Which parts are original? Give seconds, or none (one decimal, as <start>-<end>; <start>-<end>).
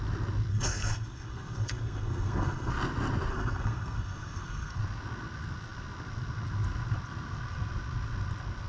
0.0-0.5; 2.7-3.3; 4.8-8.7